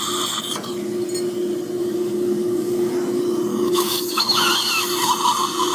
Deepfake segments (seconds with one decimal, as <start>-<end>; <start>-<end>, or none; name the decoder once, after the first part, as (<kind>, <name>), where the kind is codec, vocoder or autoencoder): 1.8-2.9 (codec, DAC); 3.5-4.5